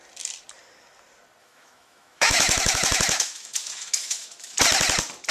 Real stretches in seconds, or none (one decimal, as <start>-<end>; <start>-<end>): 0.0-1.4; 4.6-5.3